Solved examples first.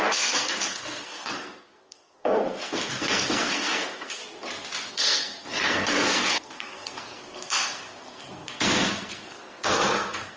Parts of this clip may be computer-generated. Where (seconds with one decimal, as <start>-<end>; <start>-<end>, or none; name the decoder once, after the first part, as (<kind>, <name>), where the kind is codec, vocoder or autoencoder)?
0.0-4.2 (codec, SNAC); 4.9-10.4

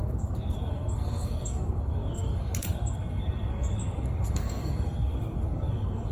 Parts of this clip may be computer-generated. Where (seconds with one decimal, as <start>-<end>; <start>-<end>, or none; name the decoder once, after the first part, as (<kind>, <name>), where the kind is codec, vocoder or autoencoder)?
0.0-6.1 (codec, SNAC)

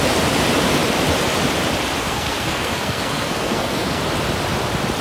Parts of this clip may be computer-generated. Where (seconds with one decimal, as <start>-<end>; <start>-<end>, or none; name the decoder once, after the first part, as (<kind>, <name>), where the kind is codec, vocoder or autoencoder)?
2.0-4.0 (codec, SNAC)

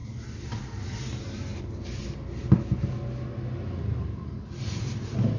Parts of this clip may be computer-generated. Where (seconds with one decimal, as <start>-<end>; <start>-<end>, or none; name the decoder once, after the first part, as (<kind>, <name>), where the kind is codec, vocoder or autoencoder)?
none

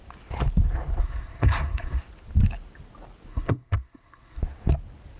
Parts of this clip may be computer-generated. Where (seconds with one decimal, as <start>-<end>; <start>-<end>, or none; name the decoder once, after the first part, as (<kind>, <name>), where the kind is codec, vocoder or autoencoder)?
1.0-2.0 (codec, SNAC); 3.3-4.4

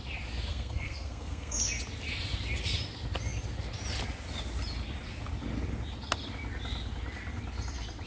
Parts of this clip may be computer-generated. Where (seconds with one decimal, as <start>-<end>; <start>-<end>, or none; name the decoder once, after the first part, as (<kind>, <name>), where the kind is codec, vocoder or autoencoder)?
0.5-1.6 (codec, SNAC)

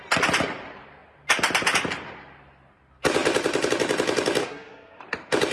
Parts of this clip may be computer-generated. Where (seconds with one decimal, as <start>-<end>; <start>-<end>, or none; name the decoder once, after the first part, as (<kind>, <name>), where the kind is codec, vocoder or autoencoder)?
4.4-5.0 (codec, SNAC)

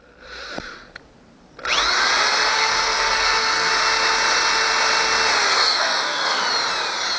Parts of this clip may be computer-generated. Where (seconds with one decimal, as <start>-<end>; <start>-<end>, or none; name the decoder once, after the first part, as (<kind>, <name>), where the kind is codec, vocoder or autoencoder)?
2.5-3.7 (codec, SNAC); 5.5-6.4